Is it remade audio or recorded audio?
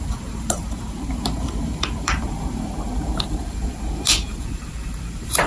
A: remade